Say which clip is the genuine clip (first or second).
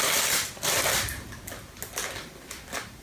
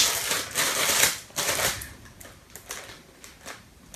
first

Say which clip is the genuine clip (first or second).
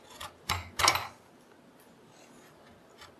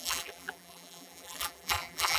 first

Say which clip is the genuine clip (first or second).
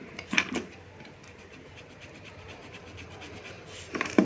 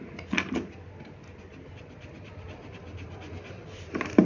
second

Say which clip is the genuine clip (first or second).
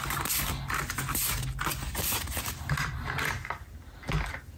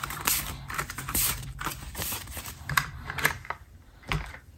first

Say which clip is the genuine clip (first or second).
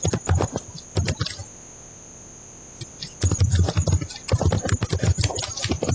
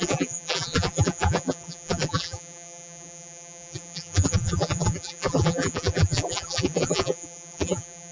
first